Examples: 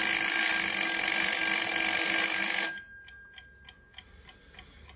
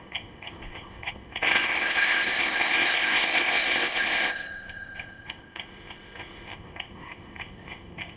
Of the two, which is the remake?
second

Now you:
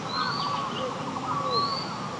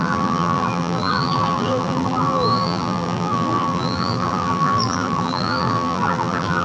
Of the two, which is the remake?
second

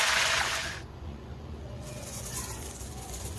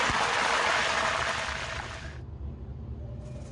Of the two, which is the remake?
first